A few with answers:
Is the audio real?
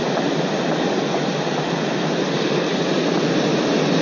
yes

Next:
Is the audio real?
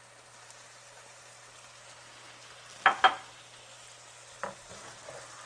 yes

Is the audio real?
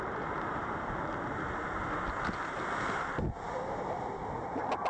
yes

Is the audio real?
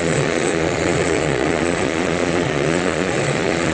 no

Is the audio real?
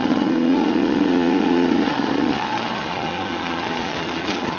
no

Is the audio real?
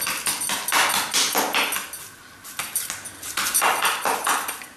yes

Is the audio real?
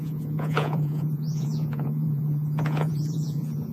no